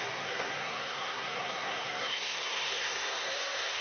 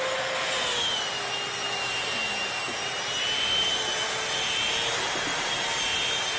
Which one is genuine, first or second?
second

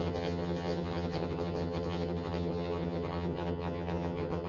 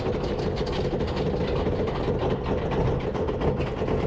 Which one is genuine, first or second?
second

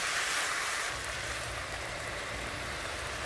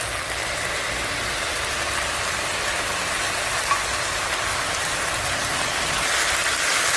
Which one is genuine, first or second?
second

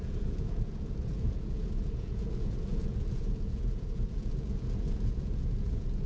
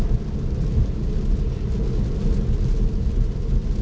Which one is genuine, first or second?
second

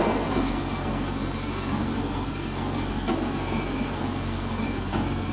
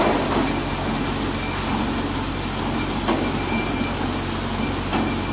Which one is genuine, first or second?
second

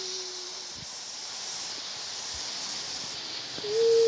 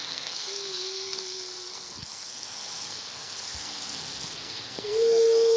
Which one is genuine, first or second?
first